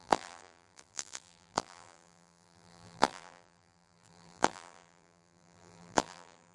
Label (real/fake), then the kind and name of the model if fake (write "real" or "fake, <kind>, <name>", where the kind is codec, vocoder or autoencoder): fake, vocoder, BigVGAN v2